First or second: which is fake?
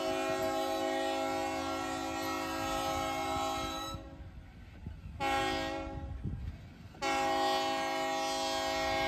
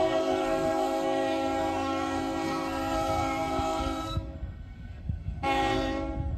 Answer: second